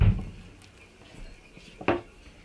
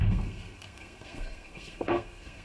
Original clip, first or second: first